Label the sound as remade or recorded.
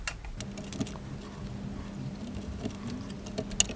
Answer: recorded